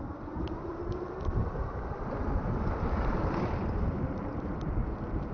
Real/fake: real